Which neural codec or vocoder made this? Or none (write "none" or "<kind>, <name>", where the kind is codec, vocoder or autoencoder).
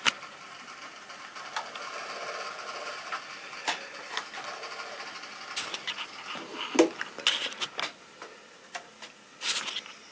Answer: none